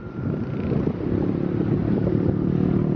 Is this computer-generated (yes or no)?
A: yes